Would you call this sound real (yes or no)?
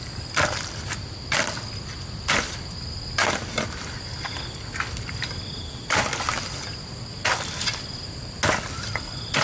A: yes